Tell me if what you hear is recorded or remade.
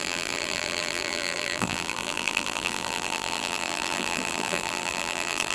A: remade